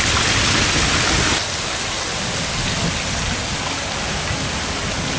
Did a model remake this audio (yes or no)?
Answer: no